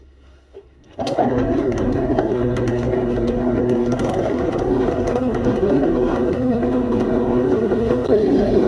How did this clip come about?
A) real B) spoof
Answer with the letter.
B